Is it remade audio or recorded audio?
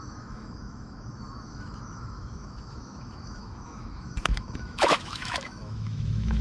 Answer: remade